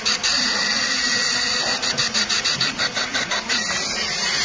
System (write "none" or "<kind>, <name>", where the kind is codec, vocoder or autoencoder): none